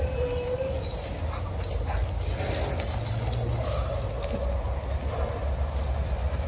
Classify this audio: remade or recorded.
recorded